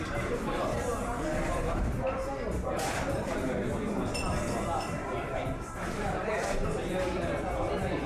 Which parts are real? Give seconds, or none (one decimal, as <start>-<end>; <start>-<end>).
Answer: 0.9-2.6

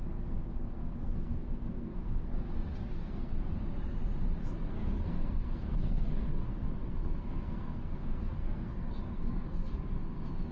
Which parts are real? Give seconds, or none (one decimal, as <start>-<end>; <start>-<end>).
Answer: 2.3-2.9; 3.3-4.4

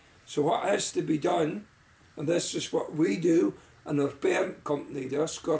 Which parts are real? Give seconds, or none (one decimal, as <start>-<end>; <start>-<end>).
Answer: 0.0-1.3; 4.7-5.6

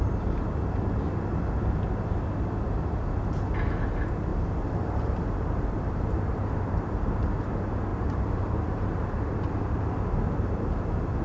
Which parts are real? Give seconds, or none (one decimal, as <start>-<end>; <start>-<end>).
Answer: 0.0-4.3; 6.9-7.9; 9.9-11.2